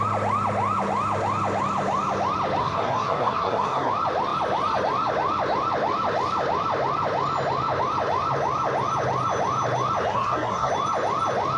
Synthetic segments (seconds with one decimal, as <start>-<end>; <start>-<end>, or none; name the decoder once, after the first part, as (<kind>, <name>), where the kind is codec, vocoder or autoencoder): 2.6-3.9 (codec, SNAC); 10.1-10.7